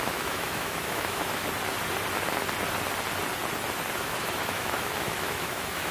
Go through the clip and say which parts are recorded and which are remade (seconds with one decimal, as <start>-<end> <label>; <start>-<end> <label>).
0.0-1.4 remade; 1.4-4.0 recorded; 4.0-5.9 remade